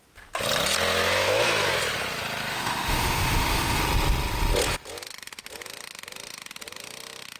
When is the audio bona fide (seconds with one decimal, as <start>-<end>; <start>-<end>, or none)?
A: 0.0-2.5; 3.8-7.4